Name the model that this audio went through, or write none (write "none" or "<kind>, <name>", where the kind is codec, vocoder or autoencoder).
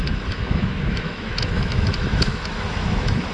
autoencoder, DAC-VAE